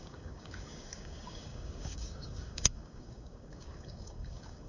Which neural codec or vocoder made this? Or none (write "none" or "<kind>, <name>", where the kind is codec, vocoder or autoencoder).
codec, DAC